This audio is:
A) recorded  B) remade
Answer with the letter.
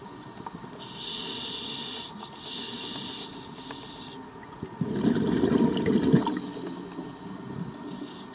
A